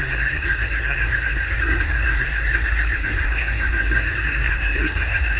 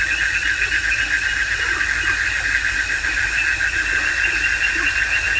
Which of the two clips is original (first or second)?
second